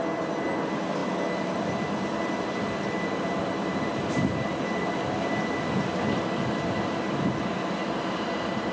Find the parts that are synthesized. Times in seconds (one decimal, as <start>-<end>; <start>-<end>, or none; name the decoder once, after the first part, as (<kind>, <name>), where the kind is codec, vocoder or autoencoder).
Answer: none